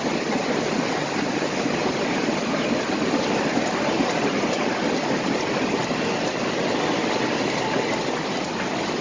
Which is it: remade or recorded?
recorded